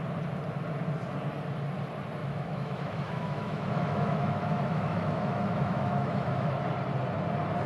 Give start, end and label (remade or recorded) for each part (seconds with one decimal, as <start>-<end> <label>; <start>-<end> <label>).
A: 0.0-2.2 recorded; 2.2-6.5 remade; 6.5-7.7 recorded